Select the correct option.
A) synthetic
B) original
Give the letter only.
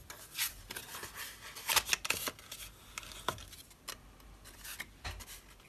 B